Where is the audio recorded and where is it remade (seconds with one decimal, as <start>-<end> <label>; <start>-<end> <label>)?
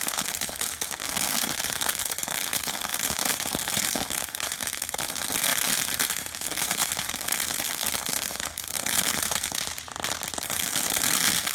0.0-9.6 remade; 9.6-10.4 recorded; 10.4-11.5 remade